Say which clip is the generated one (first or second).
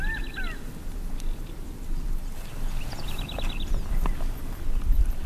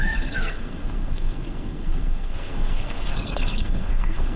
second